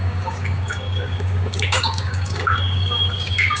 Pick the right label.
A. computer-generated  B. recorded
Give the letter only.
A